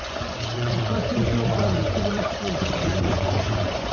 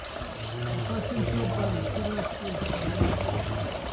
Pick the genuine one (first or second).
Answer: second